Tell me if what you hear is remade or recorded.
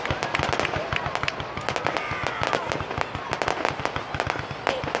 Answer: recorded